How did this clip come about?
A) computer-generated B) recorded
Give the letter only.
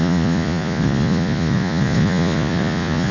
A